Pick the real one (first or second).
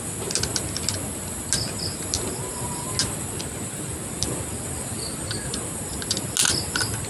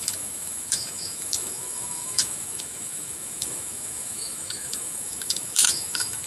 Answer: first